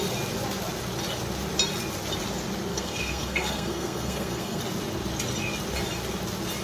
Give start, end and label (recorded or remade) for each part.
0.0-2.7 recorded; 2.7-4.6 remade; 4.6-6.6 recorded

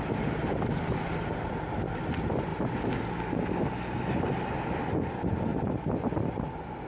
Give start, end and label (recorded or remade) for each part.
0.0-6.9 recorded